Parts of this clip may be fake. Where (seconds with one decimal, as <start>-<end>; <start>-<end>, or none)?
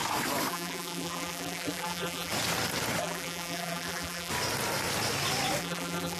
0.5-2.3; 3.0-4.3; 5.6-6.2